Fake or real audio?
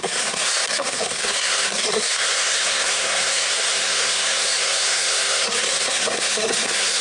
fake